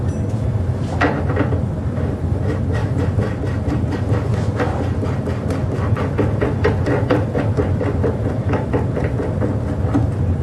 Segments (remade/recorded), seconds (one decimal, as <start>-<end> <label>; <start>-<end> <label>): 0.0-2.8 recorded; 2.8-4.0 remade; 4.0-10.4 recorded